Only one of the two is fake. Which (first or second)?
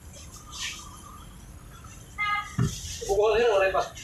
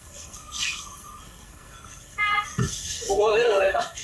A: second